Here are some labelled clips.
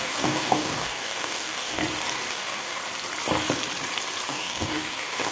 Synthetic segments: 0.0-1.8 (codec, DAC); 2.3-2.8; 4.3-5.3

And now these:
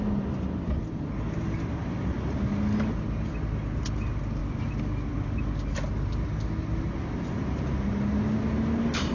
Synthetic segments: none

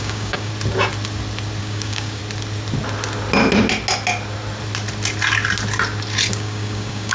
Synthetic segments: 0.0-0.5 (codec, DAC); 1.6-2.2; 6.3-7.1

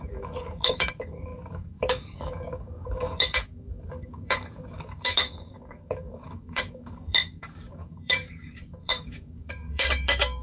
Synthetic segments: 0.0-10.4 (codec, DAC)

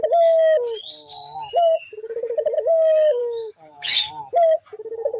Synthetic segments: 3.2-4.1 (codec, DAC)

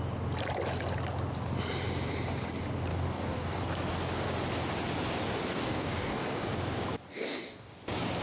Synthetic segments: 2.9-3.6 (codec, DAC); 5.5-6.5; 7.1-7.7